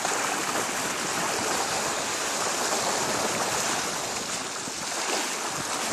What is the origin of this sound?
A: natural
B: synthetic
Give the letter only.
A